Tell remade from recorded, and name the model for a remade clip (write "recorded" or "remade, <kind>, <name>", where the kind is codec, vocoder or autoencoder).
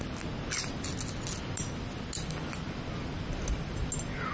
recorded